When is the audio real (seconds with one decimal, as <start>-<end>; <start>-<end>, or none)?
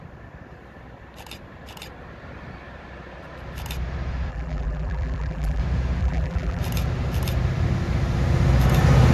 0.0-4.3; 5.6-6.0; 6.6-9.1